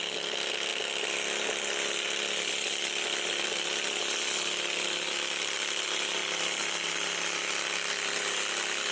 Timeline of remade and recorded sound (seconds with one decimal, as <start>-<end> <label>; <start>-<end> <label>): 0.0-8.9 recorded